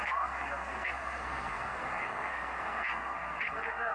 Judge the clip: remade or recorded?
remade